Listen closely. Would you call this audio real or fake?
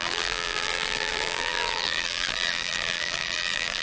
fake